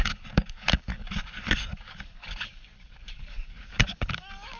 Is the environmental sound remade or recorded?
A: remade